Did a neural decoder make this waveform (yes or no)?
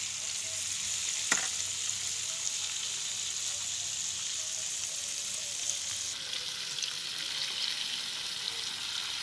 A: no